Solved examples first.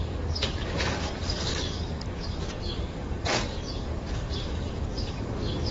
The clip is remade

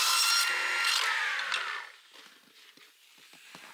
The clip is recorded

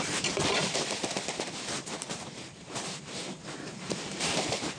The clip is remade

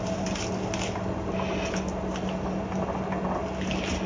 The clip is recorded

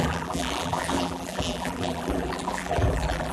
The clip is remade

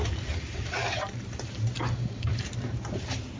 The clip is remade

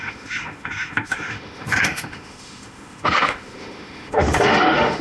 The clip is remade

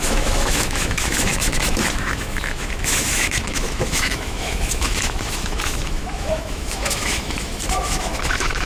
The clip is remade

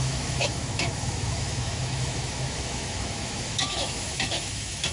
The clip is remade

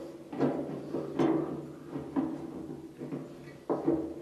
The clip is recorded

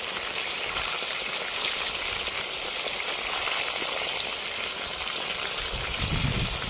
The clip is recorded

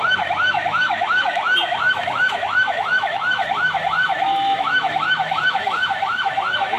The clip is remade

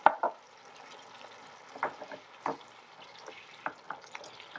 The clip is recorded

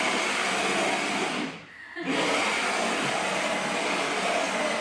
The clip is recorded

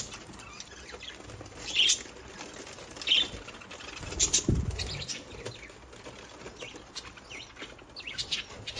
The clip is recorded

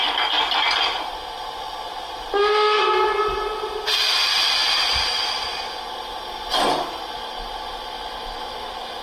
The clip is recorded